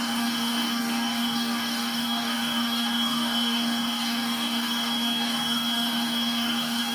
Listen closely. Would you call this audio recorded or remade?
remade